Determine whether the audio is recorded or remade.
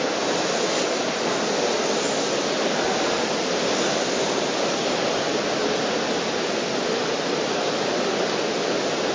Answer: recorded